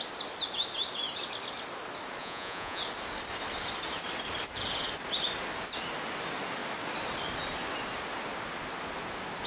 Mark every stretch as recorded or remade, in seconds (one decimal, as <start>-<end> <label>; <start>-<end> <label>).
0.0-2.2 recorded; 2.2-2.8 remade; 2.8-9.5 recorded